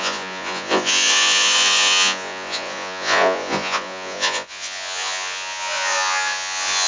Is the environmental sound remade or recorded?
remade